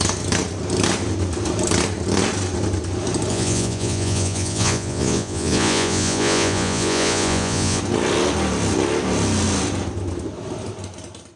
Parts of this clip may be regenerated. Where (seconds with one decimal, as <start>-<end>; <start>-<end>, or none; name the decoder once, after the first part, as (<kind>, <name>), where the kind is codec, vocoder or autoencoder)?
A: 3.3-7.8 (vocoder, Vocos)